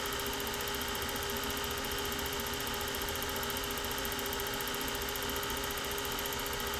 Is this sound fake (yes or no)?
no